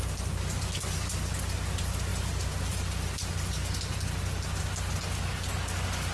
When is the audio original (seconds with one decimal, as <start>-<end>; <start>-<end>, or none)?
0.0-6.1